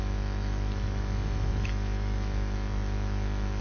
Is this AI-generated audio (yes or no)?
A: yes